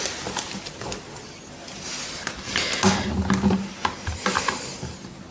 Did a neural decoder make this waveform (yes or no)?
no